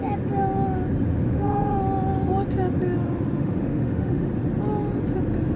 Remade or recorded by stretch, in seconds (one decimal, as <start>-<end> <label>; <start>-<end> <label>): 0.0-1.3 recorded; 1.3-1.8 remade; 1.8-3.4 recorded; 3.4-4.3 remade; 4.3-5.6 recorded